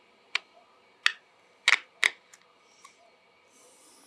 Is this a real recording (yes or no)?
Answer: yes